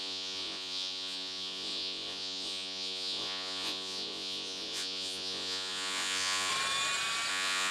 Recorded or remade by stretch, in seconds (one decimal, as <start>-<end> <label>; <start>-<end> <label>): 0.0-6.5 remade; 6.5-7.3 recorded; 7.3-7.7 remade